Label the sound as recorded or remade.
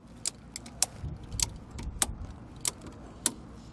recorded